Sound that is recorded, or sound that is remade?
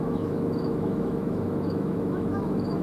remade